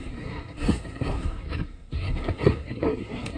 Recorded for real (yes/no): no